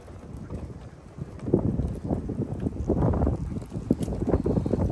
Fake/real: real